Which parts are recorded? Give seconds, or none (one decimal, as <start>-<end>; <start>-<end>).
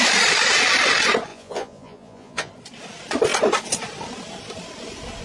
0.0-1.3; 2.5-5.2